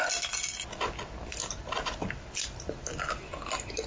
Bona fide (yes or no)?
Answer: yes